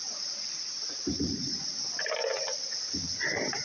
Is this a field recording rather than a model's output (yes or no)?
yes